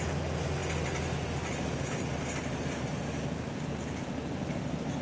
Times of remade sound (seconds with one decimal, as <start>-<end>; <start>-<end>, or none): none